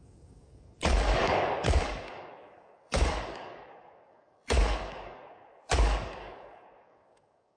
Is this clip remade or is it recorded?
remade